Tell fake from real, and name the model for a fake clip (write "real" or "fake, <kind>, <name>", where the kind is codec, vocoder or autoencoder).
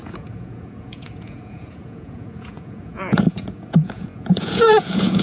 fake, vocoder, Vocos